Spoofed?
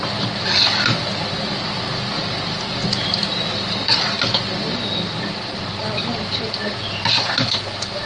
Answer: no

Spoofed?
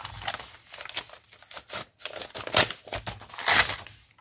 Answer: no